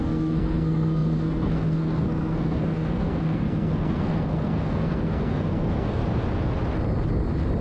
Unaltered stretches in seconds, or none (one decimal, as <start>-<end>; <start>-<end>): 6.0-7.6